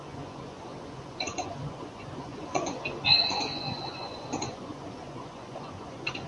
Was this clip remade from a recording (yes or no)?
yes